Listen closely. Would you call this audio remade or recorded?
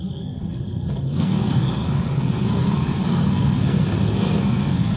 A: remade